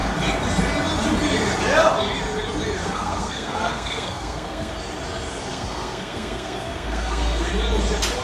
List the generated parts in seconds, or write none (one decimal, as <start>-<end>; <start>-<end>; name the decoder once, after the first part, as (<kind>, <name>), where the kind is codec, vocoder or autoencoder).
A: 2.8-4.7 (codec, SNAC); 5.5-7.5

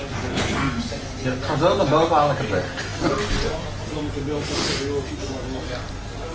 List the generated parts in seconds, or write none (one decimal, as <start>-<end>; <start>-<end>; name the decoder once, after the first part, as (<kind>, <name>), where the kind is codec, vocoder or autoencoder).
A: none